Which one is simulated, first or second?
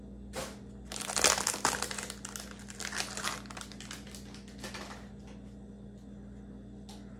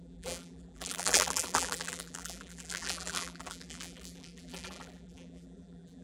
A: second